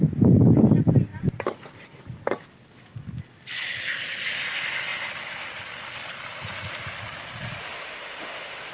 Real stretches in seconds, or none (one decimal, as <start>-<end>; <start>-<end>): 0.0-7.6